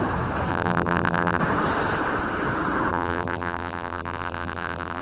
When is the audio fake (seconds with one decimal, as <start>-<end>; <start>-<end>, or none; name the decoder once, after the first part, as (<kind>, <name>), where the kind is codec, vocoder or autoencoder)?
0.5-1.4 (vocoder, BigVGAN v2); 2.9-5.0